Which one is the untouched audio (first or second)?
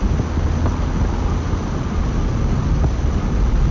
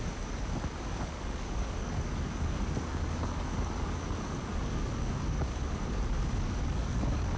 first